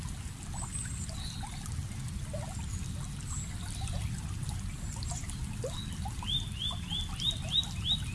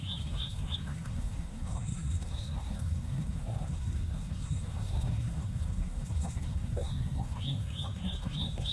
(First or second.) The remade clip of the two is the second